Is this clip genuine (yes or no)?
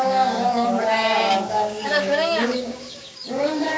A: no